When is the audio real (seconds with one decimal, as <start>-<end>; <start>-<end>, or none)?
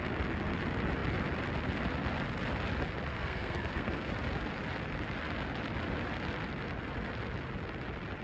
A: 0.0-3.1; 4.1-8.2